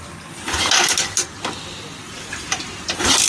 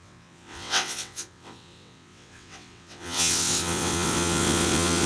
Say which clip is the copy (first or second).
second